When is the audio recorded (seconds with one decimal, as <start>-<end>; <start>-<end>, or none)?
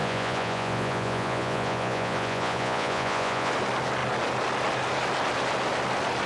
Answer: 3.5-6.3